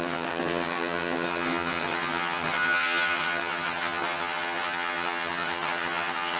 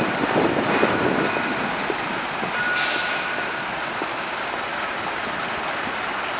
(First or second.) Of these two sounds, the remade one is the first